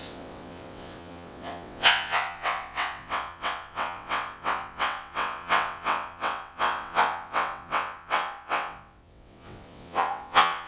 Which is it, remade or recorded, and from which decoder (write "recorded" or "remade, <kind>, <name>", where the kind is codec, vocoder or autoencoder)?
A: remade, vocoder, WaveNeXt